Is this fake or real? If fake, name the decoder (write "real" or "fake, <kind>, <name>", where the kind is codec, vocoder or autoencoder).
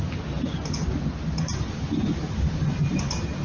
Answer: real